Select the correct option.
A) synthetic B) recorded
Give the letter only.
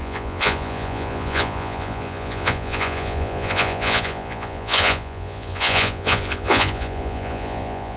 A